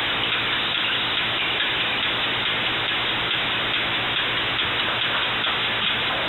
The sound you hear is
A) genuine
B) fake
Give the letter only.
A